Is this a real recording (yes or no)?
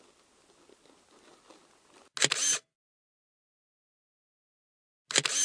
yes